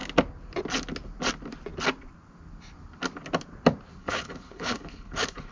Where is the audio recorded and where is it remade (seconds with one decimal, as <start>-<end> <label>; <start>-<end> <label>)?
0.0-4.0 recorded; 4.0-5.5 remade